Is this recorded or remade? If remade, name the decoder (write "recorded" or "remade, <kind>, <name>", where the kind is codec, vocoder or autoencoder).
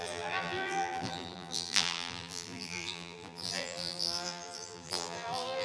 remade, vocoder, BigVGAN v2